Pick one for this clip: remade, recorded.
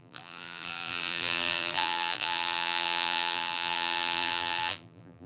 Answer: remade